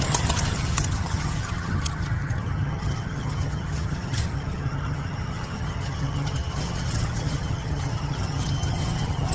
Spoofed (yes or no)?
yes